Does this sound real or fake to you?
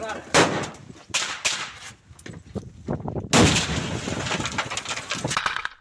real